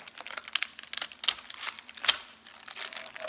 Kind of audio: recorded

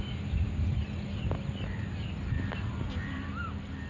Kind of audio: recorded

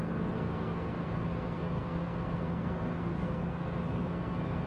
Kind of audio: remade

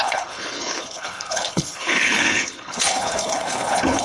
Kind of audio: remade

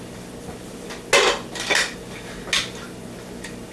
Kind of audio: recorded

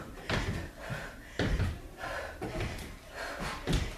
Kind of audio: recorded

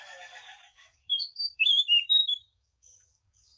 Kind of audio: remade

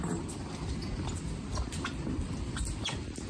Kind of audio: recorded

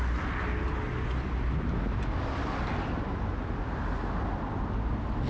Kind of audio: recorded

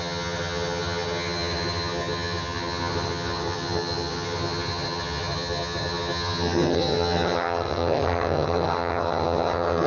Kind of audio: remade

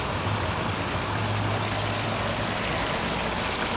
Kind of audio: recorded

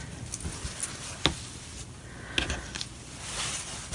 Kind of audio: recorded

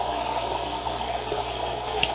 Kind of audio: remade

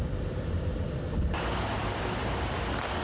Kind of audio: recorded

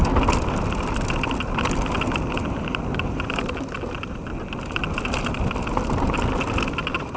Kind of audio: recorded